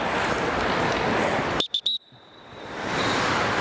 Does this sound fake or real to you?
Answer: real